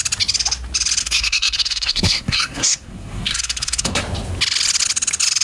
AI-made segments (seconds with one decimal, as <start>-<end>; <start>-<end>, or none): 1.0-4.0